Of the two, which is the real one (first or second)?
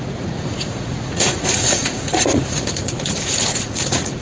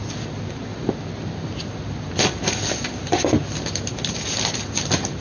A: second